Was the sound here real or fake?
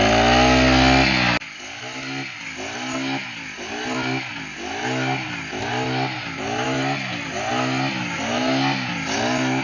real